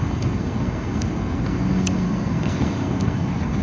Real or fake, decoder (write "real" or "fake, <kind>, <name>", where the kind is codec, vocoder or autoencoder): fake, codec, SNAC